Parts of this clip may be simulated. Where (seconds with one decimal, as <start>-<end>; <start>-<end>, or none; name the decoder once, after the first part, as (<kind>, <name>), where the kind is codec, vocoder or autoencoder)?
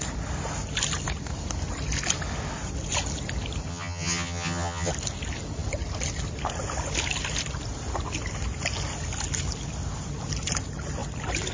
3.7-4.9 (vocoder, HiFi-GAN)